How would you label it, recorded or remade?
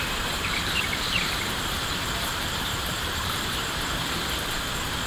remade